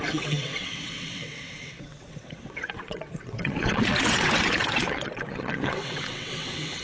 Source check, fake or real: fake